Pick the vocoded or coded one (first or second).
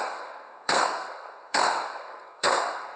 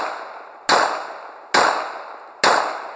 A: first